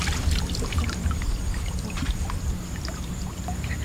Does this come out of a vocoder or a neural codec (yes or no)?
no